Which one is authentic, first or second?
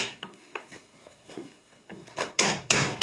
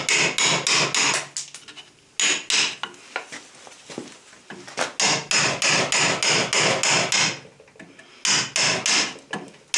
second